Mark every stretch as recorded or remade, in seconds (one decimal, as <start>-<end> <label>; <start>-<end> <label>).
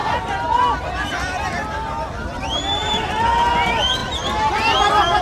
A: 0.0-2.8 recorded; 2.8-3.5 remade; 3.5-4.0 recorded; 4.0-5.2 remade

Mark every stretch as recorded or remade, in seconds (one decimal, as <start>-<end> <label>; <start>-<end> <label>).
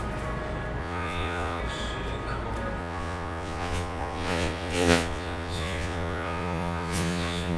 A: 0.0-0.8 recorded; 0.8-1.6 remade; 1.6-2.8 recorded; 2.8-7.6 remade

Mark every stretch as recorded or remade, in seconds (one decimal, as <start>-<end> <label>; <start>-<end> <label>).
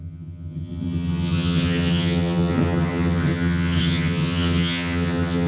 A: 0.0-5.5 remade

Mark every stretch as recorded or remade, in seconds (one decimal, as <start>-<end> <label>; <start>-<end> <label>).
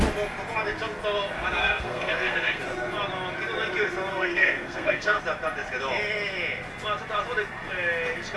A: 0.0-1.6 recorded; 1.6-2.6 remade; 2.6-4.1 recorded; 4.1-5.2 remade; 5.2-8.4 recorded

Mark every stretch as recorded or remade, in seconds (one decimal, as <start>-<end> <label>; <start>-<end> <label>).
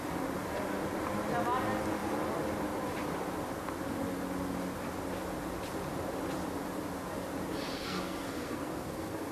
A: 0.0-7.7 recorded; 7.7-9.3 remade